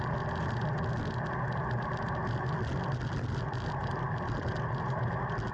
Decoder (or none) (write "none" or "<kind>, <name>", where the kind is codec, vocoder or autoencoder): none